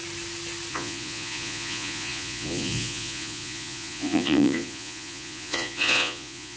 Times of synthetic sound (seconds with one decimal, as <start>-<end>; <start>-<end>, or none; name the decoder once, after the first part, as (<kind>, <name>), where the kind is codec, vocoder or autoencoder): 0.7-6.6 (vocoder, Vocos)